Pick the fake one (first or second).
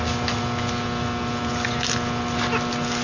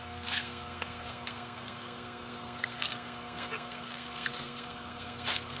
second